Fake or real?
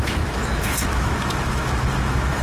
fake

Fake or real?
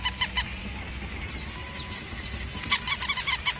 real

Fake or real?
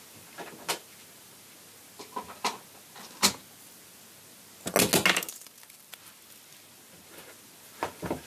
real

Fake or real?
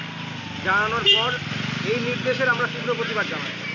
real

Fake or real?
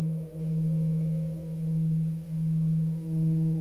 fake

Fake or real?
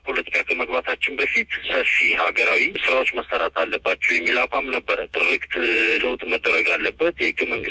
fake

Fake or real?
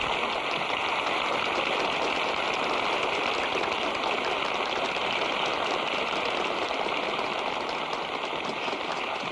real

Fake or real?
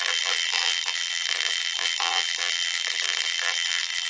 fake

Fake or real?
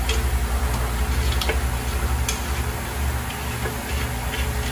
real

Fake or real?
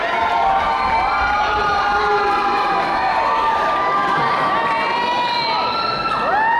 real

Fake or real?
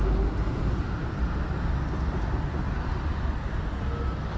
real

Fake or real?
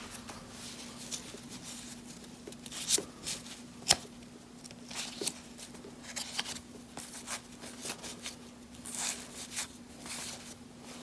real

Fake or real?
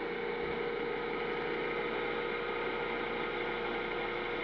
real